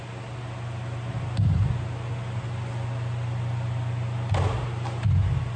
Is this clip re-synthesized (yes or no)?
no